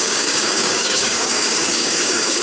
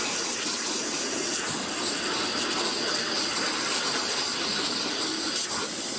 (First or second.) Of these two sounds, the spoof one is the first